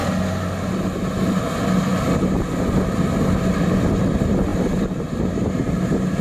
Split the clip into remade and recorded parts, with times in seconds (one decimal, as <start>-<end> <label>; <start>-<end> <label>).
0.0-6.2 recorded